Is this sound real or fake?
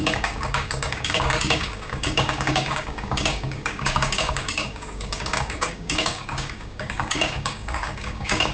fake